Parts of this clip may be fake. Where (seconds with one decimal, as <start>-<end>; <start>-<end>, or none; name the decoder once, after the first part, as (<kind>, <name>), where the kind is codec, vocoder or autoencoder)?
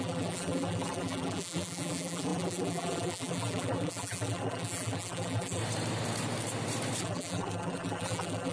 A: 0.0-5.6 (vocoder, BigVGAN v2); 7.0-8.5